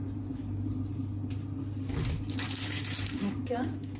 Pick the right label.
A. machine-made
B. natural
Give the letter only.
B